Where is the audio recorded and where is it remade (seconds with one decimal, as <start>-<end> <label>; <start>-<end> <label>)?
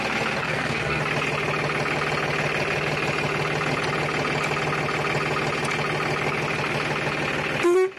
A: 0.0-0.4 recorded; 0.4-1.0 remade; 1.0-8.0 recorded